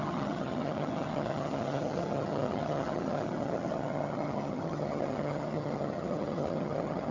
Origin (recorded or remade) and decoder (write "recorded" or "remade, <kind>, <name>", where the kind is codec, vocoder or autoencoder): remade, vocoder, HiFi-GAN